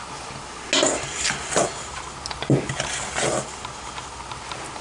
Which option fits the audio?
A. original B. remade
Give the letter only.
A